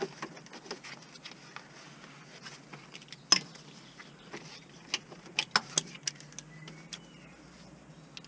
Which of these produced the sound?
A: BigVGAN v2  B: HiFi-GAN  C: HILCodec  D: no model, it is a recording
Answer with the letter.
D